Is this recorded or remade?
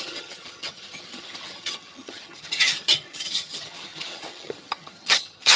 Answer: remade